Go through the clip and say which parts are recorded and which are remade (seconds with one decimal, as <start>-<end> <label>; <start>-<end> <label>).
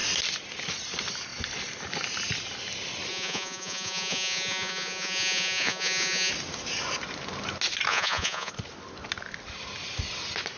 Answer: 0.0-3.1 recorded; 3.1-6.3 remade; 6.3-7.9 recorded; 7.9-8.5 remade; 8.5-10.6 recorded